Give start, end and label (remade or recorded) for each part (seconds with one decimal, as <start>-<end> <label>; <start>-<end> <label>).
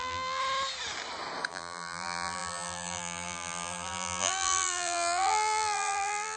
0.0-0.4 remade; 0.4-1.5 recorded; 1.5-6.4 remade